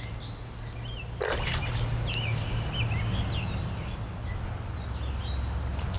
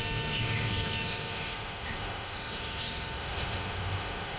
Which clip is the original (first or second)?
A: first